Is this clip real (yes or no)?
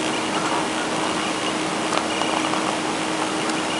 yes